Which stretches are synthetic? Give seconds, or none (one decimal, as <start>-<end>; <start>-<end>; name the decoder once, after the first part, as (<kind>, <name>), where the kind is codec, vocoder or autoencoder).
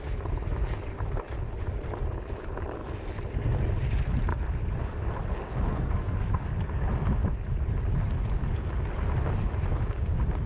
5.7-6.5 (codec, SNAC)